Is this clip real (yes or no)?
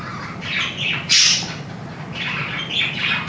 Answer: yes